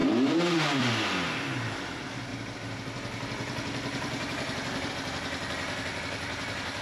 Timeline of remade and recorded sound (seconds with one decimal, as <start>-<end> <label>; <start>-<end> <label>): 0.0-0.9 remade; 0.9-2.3 recorded; 2.3-4.9 remade; 4.9-6.8 recorded

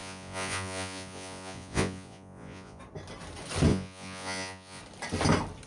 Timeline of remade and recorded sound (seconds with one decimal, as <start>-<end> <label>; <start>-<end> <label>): 0.0-2.8 remade; 2.8-3.7 recorded; 3.7-4.8 remade; 4.8-5.7 recorded

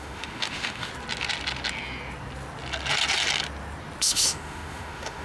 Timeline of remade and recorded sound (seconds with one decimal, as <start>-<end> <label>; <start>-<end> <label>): 0.0-0.9 remade; 0.9-4.0 recorded; 4.0-5.2 remade